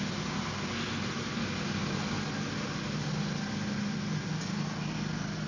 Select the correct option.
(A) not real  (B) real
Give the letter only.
B